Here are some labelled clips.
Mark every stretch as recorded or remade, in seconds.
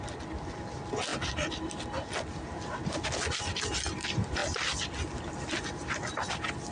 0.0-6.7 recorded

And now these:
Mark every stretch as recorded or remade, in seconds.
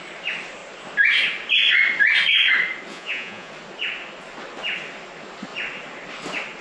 0.0-2.9 recorded; 2.9-3.5 remade; 3.5-6.6 recorded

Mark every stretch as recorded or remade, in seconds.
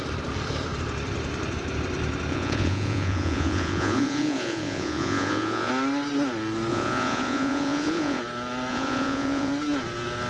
0.0-2.3 recorded; 2.3-5.7 remade; 5.7-6.7 recorded; 6.7-8.2 remade; 8.2-8.7 recorded; 8.7-9.5 remade; 9.5-10.3 recorded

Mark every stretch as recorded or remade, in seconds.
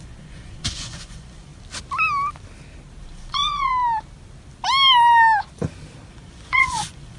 0.0-1.5 remade; 1.5-3.0 recorded; 3.0-3.7 remade; 3.7-6.1 recorded; 6.1-7.2 remade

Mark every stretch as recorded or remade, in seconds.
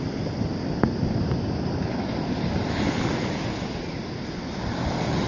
0.0-5.3 recorded